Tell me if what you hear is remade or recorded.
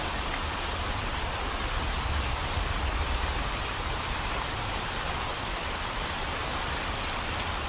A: recorded